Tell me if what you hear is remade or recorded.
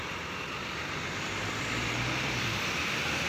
remade